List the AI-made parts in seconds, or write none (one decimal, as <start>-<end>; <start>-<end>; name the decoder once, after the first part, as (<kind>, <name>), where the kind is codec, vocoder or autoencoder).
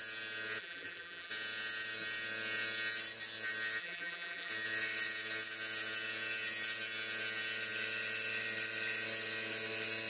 0.6-1.3 (vocoder, BigVGAN v2); 3.8-4.5